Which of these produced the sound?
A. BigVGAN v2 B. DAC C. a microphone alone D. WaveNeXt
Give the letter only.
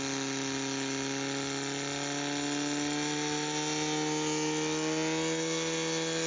C